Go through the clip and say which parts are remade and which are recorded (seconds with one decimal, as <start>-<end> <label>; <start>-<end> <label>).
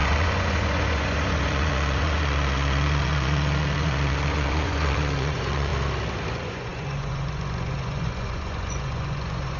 0.0-5.7 remade; 5.7-6.3 recorded; 6.3-9.6 remade